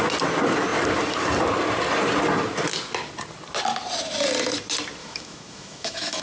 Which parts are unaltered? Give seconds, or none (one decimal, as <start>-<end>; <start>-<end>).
0.0-5.0

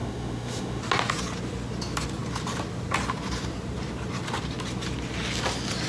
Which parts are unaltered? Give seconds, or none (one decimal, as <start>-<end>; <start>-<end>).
0.8-5.9

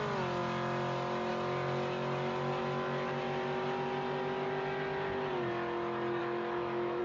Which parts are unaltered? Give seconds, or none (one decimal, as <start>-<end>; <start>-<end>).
0.0-6.2

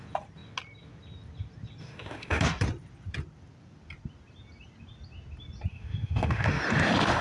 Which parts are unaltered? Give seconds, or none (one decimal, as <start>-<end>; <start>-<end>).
0.0-1.8; 2.4-5.7; 6.6-7.2

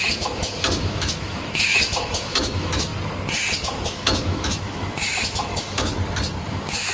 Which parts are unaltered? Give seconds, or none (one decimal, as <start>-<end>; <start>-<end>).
2.9-3.5; 5.9-6.5

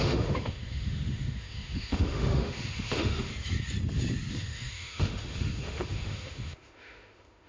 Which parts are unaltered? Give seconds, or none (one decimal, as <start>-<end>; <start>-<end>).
3.3-4.3